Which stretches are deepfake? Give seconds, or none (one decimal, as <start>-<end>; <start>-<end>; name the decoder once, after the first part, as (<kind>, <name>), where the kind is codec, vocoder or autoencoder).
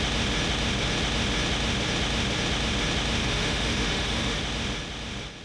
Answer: 3.2-4.4 (autoencoder, DAC-VAE)